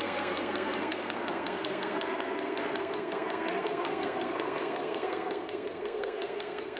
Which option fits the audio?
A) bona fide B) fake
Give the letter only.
B